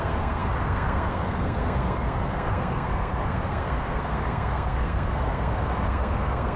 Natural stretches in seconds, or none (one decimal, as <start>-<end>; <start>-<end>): none